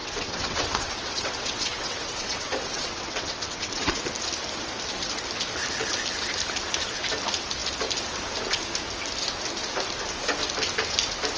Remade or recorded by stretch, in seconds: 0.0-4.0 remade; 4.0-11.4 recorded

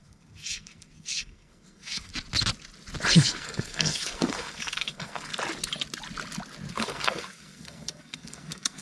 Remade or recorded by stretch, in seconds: 0.0-2.1 remade; 2.1-3.1 recorded; 3.1-5.3 remade; 5.3-6.7 recorded; 6.7-8.8 remade

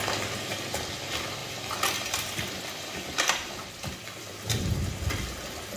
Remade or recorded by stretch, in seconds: 0.0-1.4 recorded; 1.4-4.9 remade; 4.9-5.8 recorded

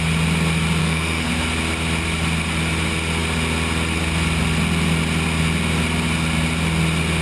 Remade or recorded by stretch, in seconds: 0.0-0.8 recorded; 0.8-1.3 remade; 1.3-7.2 recorded

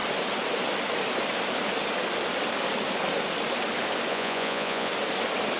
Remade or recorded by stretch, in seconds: 0.0-4.1 recorded; 4.1-4.9 remade; 4.9-5.6 recorded

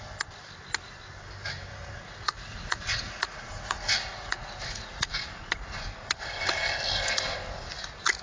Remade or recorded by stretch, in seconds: 0.0-1.7 recorded; 1.7-5.1 remade; 5.1-8.2 recorded

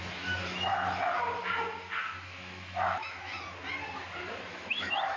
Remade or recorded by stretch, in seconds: 0.0-0.7 remade; 0.7-2.0 recorded; 2.0-3.3 remade; 3.3-4.5 recorded; 4.5-5.2 remade

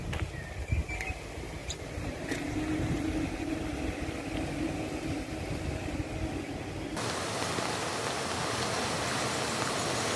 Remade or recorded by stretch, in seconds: 0.0-1.6 recorded; 1.6-3.5 remade; 3.5-10.2 recorded